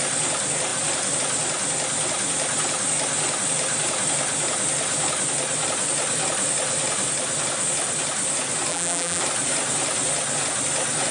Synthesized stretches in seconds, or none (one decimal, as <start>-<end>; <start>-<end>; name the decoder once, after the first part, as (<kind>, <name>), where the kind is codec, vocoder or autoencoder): 8.7-9.2 (vocoder, BigVGAN v2)